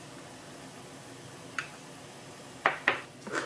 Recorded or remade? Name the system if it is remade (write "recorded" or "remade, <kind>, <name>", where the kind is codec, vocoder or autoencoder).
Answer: recorded